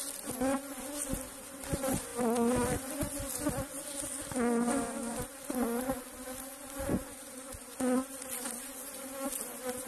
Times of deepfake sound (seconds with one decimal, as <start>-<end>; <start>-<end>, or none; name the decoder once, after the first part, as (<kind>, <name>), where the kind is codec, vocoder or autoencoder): none